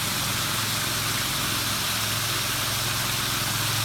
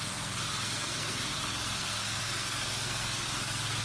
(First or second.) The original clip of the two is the first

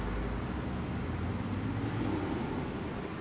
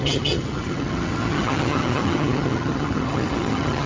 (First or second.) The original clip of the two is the first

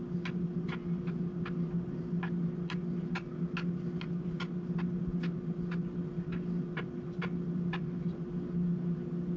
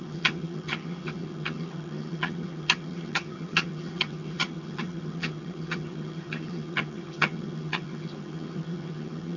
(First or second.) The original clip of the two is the first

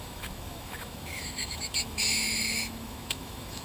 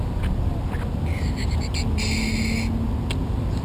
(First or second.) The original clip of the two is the second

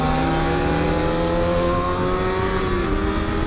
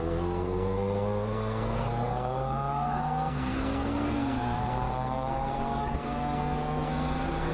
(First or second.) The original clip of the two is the first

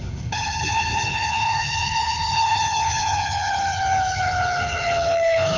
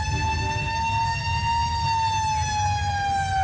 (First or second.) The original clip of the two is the second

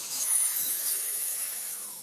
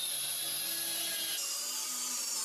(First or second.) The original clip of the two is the second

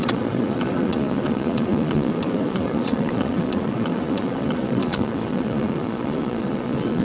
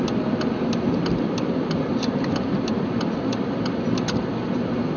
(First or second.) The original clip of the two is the second